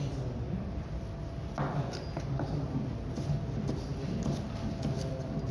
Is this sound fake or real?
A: real